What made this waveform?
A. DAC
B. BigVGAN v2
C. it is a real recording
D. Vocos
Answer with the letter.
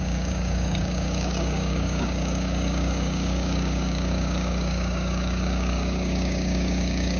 A